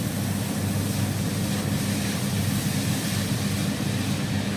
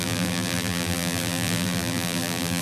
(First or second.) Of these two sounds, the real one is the first